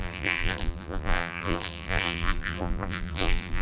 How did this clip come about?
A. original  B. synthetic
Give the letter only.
B